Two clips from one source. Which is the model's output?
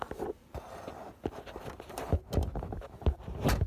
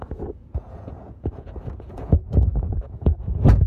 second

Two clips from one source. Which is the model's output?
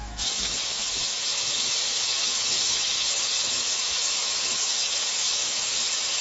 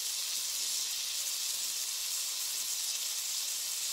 first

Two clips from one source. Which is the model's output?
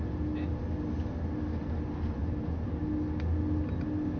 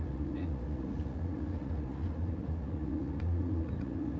second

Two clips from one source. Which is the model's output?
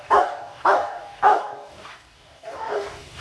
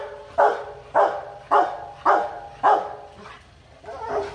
first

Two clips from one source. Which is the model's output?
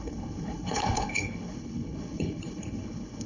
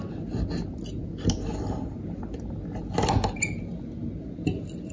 first